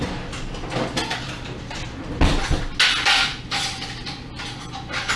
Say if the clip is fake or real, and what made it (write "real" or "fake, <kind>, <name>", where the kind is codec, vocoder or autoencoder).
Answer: real